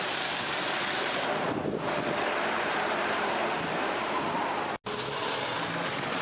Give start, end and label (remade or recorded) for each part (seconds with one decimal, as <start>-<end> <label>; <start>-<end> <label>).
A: 0.0-6.2 recorded